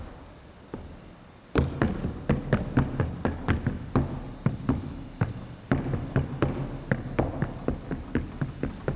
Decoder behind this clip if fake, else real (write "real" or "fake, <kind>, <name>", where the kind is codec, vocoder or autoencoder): real